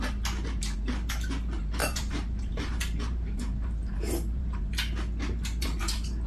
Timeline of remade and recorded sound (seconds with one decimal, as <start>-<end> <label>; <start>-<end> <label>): 0.0-1.8 recorded; 1.8-4.7 remade; 4.7-6.3 recorded

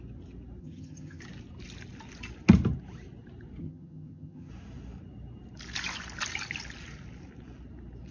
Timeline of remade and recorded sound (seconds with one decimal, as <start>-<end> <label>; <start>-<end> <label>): 0.0-0.6 recorded; 0.6-1.2 remade; 1.2-3.6 recorded; 3.6-4.5 remade; 4.5-8.1 recorded

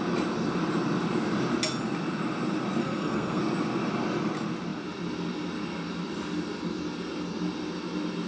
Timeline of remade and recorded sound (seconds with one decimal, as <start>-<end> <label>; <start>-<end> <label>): 0.0-2.8 recorded; 2.8-3.4 remade; 3.4-8.3 recorded

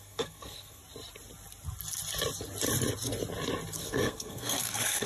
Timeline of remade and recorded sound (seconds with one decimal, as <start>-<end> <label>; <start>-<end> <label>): 0.0-0.8 remade; 0.8-3.8 recorded; 3.8-5.1 remade

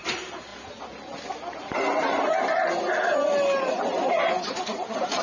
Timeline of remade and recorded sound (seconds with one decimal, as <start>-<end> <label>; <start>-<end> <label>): 0.0-5.2 recorded